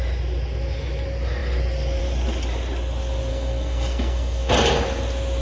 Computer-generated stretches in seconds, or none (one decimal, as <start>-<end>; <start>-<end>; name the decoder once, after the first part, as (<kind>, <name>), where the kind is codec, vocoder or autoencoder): 3.3-4.5 (codec, SNAC)